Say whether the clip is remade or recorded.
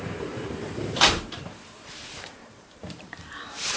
remade